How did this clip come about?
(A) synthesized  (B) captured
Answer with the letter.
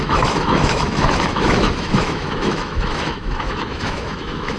A